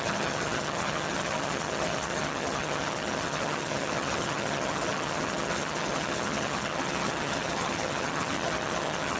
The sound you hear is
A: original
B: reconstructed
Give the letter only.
B